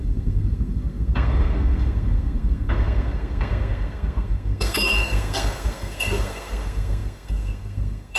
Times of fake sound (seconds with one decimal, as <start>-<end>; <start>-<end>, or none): 0.0-8.2